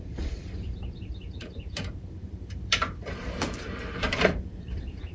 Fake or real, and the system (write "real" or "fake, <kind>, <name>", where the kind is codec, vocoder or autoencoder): fake, vocoder, BigVGAN v2